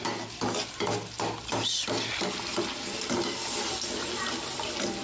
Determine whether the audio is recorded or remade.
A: recorded